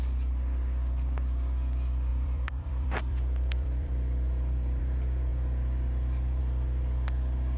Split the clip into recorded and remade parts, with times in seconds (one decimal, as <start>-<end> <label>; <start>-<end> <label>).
0.0-2.1 recorded; 2.1-4.8 remade; 4.8-7.6 recorded